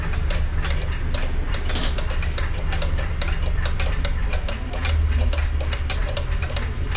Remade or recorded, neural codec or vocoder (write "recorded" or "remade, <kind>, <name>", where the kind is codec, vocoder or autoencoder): recorded